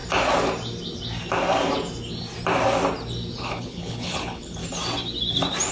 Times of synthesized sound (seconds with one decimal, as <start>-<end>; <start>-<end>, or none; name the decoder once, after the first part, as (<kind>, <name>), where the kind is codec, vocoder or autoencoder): 3.4-4.6 (codec, HILCodec)